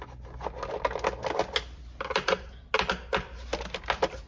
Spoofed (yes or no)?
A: no